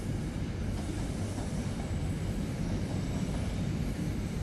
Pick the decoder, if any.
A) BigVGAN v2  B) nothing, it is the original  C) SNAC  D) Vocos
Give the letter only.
B